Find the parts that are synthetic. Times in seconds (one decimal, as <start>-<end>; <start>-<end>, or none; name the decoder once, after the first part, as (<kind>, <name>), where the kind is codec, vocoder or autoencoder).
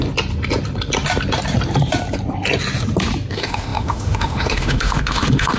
3.3-5.6 (autoencoder, DAC-VAE)